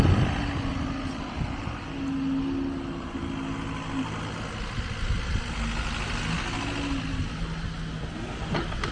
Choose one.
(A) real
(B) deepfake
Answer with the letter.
A